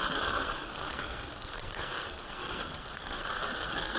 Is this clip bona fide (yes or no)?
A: no